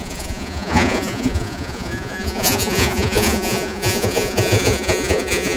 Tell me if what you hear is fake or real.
fake